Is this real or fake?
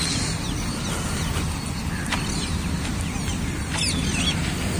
real